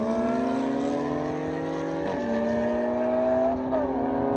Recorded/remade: recorded